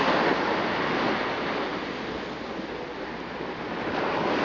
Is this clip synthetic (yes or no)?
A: no